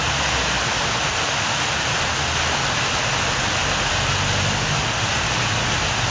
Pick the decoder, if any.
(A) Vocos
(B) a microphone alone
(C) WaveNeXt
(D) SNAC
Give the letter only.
B